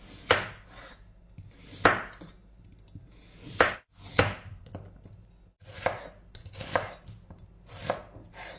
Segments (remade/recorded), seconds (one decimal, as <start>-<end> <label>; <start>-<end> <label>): 0.0-6.4 recorded; 6.4-6.9 remade; 6.9-8.6 recorded